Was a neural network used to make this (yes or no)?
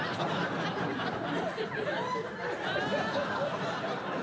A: no